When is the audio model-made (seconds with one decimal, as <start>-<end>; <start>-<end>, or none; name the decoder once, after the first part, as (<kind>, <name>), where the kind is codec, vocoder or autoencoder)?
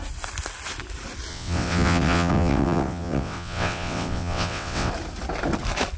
1.3-4.9 (vocoder, WaveNeXt)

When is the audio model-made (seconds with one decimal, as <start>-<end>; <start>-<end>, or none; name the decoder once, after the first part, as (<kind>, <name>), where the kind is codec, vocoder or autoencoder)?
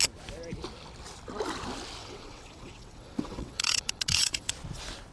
2.0-4.5 (vocoder, WaveNeXt)